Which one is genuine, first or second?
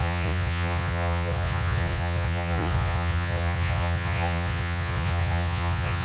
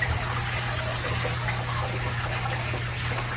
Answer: second